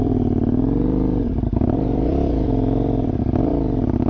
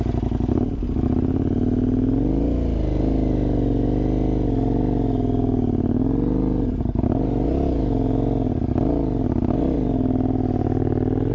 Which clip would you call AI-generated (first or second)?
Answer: first